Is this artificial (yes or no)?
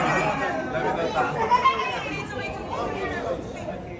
no